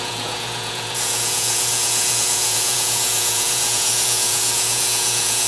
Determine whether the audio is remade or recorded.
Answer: remade